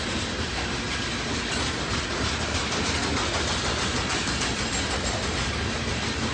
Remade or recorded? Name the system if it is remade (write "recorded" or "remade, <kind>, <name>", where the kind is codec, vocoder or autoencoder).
recorded